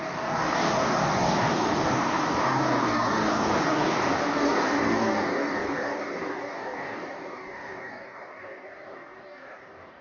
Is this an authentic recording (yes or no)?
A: no